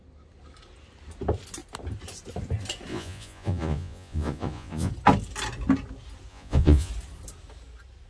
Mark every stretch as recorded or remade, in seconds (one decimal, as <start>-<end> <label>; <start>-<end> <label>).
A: 0.0-2.9 recorded; 2.9-4.9 remade; 4.9-6.3 recorded; 6.3-6.9 remade; 6.9-8.1 recorded